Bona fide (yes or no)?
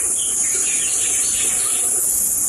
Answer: no